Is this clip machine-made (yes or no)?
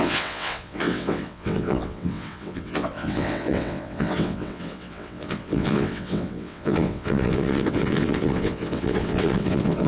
yes